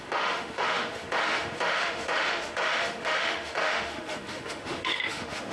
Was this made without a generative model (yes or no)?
no